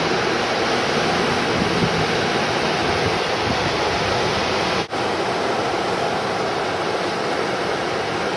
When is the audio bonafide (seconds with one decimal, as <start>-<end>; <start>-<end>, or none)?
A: 0.0-8.4